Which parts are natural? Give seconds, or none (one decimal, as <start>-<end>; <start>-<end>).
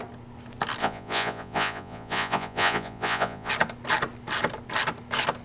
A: 0.0-0.8; 3.5-5.4